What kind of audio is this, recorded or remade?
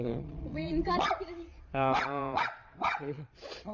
remade